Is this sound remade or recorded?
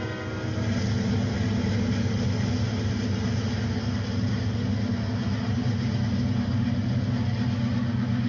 recorded